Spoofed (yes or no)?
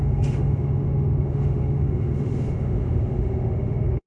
yes